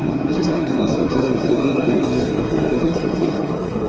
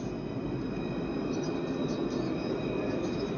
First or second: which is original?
second